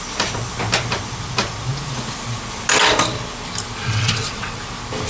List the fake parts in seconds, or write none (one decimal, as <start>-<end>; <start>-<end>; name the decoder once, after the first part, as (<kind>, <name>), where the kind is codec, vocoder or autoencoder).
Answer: 3.8-4.6 (vocoder, WaveNeXt)